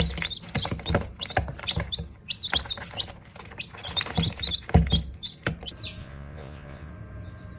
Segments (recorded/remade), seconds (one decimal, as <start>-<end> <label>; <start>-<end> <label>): 0.0-6.0 recorded; 6.0-6.9 remade; 6.9-7.6 recorded